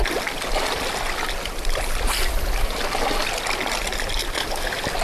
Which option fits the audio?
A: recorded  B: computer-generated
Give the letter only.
A